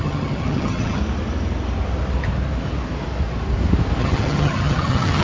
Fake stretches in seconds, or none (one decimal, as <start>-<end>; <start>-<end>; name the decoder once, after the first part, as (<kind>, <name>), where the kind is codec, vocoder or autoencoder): 0.0-1.0 (vocoder, HiFi-GAN); 4.0-5.2